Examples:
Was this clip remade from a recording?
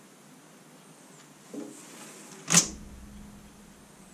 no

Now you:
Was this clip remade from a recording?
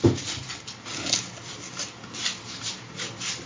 no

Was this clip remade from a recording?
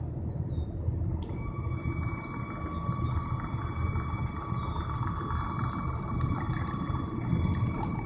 no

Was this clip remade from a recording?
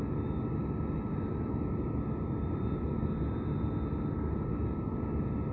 no